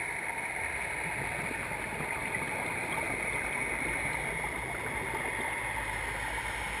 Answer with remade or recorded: recorded